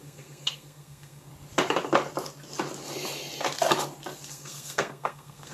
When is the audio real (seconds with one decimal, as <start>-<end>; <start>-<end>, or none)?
1.3-4.3